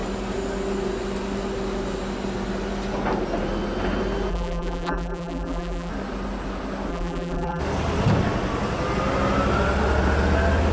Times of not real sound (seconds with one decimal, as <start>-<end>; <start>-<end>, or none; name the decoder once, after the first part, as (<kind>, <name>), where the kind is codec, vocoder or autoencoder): 4.3-5.9 (vocoder, BigVGAN v2); 6.9-7.6

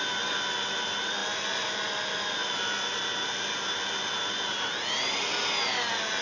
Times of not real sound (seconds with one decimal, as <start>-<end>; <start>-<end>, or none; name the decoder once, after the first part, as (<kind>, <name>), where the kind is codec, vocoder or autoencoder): none